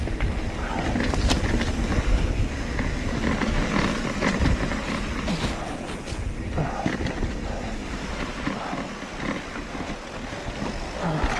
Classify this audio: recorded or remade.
recorded